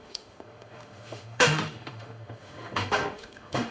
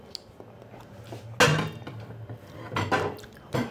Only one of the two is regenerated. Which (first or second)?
first